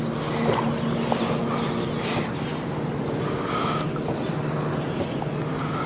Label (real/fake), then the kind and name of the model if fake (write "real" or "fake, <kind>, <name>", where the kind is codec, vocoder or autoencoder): real